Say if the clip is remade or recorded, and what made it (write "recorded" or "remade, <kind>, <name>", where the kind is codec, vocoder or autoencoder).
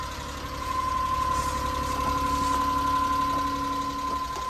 recorded